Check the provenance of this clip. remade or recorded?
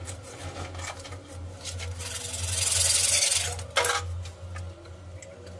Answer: recorded